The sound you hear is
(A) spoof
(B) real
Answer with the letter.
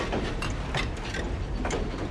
B